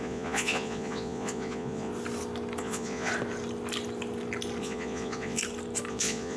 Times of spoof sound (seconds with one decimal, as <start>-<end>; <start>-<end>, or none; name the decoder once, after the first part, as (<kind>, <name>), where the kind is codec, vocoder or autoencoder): 0.0-1.9 (vocoder, Vocos); 2.6-3.1; 4.6-5.4; 5.9-6.4